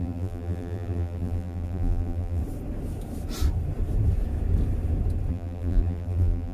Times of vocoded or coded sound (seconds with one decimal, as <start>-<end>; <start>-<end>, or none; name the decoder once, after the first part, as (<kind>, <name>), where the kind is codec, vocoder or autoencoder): 0.0-2.4 (vocoder, BigVGAN v2); 5.3-6.5